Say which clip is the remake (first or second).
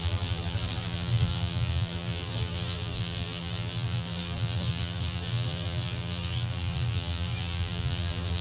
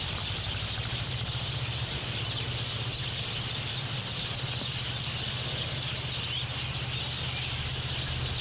first